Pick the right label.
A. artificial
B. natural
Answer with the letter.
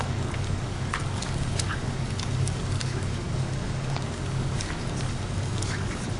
A